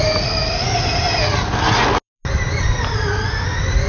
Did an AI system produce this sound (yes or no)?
no